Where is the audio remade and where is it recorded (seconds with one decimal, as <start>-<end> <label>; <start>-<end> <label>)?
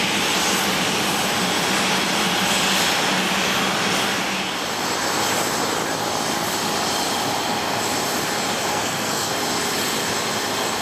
0.0-8.7 recorded; 8.7-9.3 remade; 9.3-10.8 recorded